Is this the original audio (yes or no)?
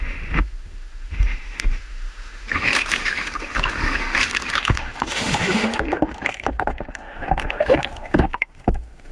no